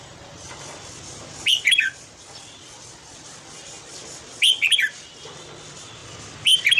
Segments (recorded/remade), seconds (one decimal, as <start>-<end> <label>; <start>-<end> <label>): 0.0-6.8 remade